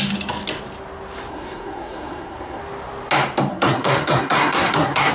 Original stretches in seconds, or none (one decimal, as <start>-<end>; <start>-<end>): 0.0-1.3; 2.6-3.5